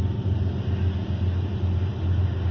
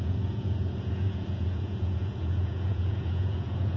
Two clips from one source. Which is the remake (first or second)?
second